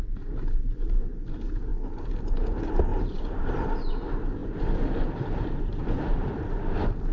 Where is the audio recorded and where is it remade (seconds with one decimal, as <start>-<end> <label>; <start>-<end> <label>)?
0.0-2.9 recorded; 2.9-3.5 remade; 3.5-4.4 recorded; 4.4-6.3 remade; 6.3-7.1 recorded